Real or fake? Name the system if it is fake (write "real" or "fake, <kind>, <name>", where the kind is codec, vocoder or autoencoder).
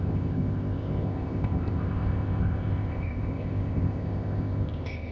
fake, codec, ZipCodec